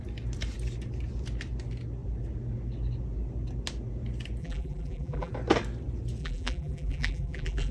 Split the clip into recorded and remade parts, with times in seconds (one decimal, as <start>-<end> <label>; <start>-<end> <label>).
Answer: 0.0-4.4 recorded; 4.4-5.3 remade; 5.3-6.2 recorded; 6.2-7.7 remade